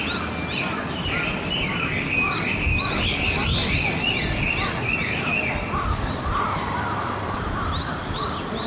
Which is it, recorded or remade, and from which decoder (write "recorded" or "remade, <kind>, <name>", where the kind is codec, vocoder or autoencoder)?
recorded